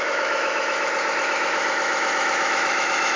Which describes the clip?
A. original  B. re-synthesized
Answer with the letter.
B